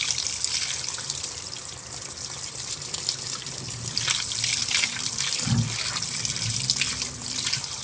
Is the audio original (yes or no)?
yes